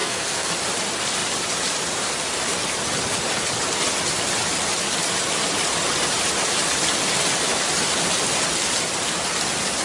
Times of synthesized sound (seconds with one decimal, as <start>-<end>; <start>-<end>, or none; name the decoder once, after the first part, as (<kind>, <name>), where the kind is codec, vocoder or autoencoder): 0.0-0.5 (codec, SNAC)